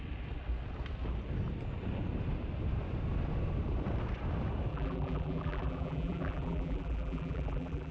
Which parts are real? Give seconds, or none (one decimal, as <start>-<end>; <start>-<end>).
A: 0.0-4.7